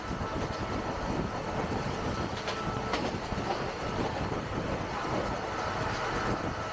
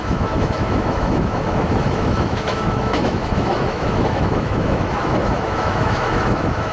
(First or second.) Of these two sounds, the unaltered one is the first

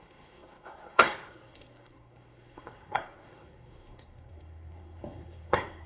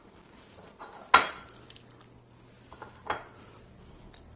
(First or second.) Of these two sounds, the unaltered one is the second